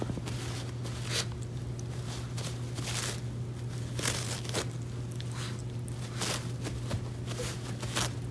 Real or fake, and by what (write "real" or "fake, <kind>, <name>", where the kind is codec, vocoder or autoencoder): real